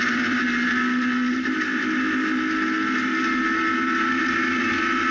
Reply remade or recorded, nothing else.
recorded